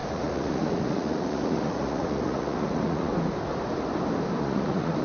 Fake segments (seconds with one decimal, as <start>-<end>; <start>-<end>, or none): 0.0-3.1; 4.4-5.0